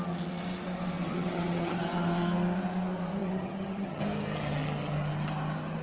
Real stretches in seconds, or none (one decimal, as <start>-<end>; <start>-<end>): 0.0-1.1; 1.8-3.2; 4.0-5.8

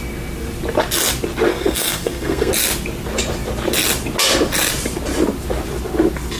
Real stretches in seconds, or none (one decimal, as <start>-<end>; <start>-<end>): 0.0-1.5; 2.5-6.4

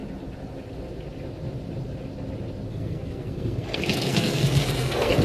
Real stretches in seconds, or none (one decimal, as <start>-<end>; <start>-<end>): 0.0-2.7